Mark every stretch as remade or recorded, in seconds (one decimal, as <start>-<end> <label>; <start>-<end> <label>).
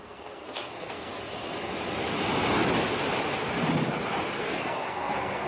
0.0-1.1 remade; 1.1-4.4 recorded; 4.4-5.5 remade